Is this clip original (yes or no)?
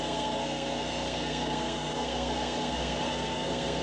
no